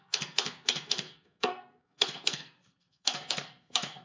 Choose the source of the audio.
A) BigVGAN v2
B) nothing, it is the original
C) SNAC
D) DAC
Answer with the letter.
C